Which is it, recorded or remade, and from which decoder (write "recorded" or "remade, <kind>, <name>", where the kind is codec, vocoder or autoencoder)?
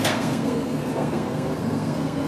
remade, codec, SNAC